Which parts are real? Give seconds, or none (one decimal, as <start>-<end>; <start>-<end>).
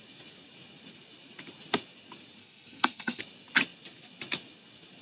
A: 0.0-2.4; 3.2-5.0